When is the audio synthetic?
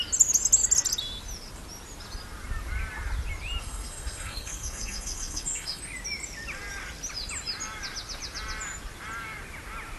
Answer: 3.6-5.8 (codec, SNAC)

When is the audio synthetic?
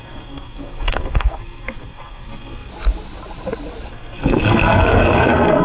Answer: 0.0-2.7 (codec, SNAC); 3.9-5.6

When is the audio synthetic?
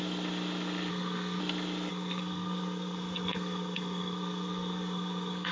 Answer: 0.9-1.4 (codec, SNAC); 1.9-5.5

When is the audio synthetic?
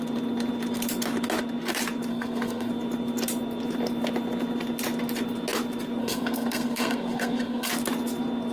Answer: 2.1-2.7 (codec, SNAC); 6.0-7.7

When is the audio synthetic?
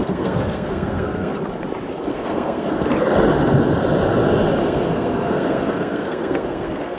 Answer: 0.0-1.3 (codec, SNAC); 2.1-2.7; 4.6-7.0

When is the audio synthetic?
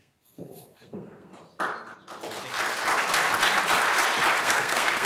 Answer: 0.0-1.3 (codec, SNAC); 4.4-5.1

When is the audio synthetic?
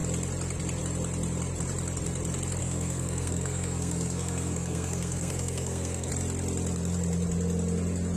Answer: 2.6-6.1 (codec, SNAC)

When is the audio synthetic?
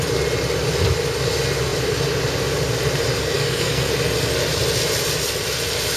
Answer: 3.2-3.9 (codec, SNAC)